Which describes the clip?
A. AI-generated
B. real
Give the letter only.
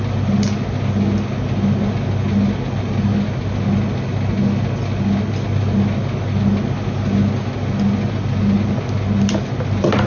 B